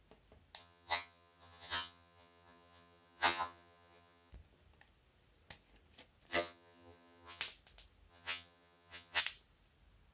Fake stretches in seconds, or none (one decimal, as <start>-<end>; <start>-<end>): 0.6-4.3; 6.3-7.4; 8.1-9.2